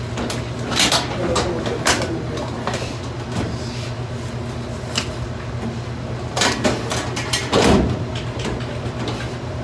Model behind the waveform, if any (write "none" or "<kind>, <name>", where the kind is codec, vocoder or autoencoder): none